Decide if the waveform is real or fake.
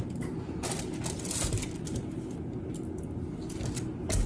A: real